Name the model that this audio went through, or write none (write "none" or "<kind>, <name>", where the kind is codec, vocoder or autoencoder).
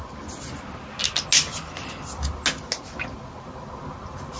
none